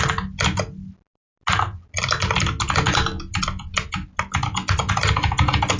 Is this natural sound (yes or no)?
yes